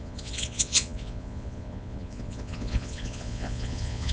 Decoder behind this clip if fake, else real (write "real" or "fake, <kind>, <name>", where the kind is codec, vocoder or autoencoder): fake, vocoder, Vocos